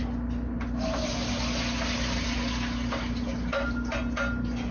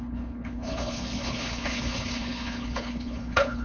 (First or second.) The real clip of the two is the first